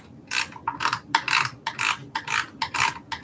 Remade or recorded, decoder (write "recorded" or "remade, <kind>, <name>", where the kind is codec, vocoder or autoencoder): recorded